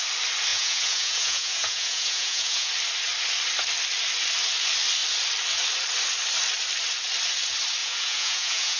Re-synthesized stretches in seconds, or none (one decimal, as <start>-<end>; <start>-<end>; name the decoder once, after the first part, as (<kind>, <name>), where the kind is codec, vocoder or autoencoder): 0.5-2.7 (vocoder, Vocos); 7.8-8.8